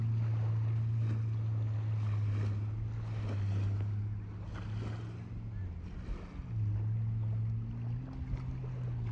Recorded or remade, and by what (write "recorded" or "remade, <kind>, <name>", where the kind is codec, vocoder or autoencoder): recorded